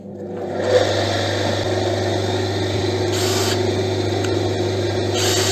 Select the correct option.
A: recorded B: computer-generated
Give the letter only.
A